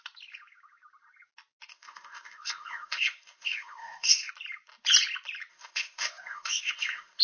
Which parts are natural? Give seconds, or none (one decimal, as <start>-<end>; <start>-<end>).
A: 0.0-1.7; 4.3-5.5

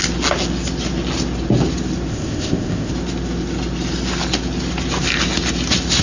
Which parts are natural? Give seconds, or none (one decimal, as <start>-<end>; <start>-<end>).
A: 0.0-2.1; 2.9-6.0

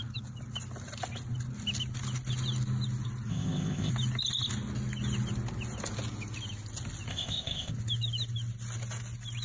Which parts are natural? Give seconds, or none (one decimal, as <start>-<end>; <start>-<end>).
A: 0.0-3.3; 3.9-7.1; 7.7-9.4

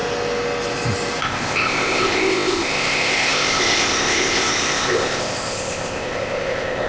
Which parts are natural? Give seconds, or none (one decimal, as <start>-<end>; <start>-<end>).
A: 0.0-1.2